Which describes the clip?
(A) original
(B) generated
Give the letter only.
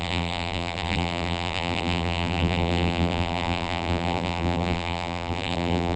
B